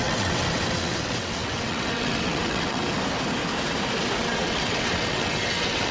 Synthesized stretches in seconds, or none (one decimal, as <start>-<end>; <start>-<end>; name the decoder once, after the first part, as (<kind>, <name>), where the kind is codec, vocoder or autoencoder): 0.0-2.8 (vocoder, WaveNeXt); 4.2-5.9